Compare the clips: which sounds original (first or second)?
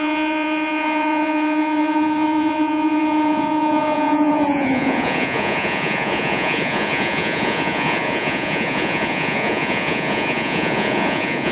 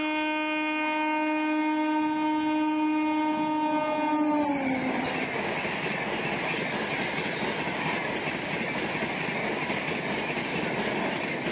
second